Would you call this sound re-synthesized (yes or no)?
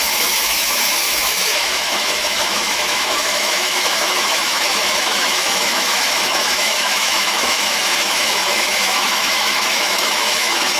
yes